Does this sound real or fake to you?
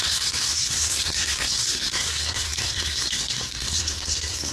fake